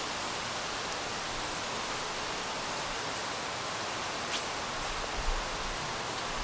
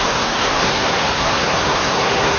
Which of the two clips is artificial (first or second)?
second